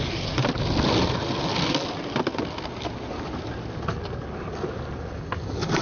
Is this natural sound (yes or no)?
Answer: yes